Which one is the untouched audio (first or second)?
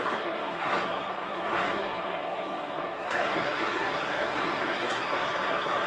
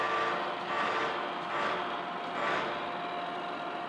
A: second